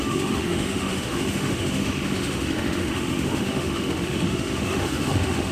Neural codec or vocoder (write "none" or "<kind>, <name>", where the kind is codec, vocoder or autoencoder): autoencoder, DAC-VAE